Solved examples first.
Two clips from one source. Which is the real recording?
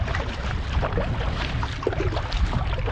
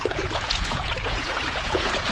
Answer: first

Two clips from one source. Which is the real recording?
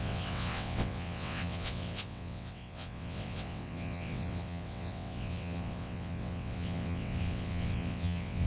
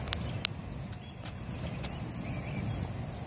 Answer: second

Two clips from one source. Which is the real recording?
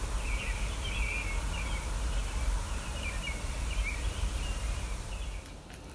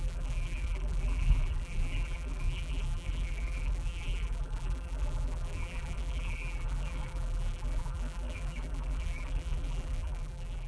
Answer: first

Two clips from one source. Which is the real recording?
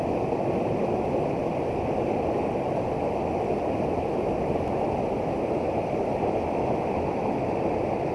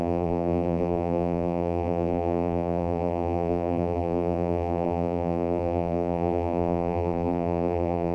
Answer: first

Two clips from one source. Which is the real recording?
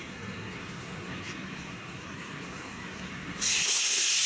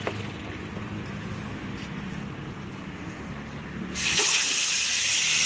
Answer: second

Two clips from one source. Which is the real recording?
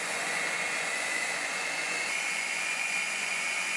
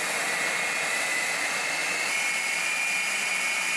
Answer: second